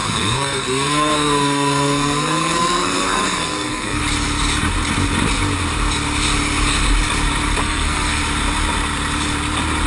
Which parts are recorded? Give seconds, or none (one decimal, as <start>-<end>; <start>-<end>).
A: 4.0-7.6; 8.2-9.9